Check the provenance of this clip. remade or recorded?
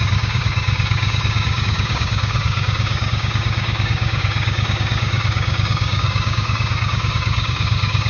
remade